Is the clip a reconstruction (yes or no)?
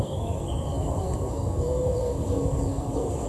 yes